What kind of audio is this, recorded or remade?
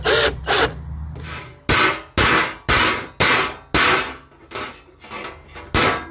recorded